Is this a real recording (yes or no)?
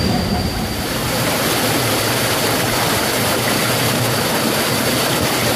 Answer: yes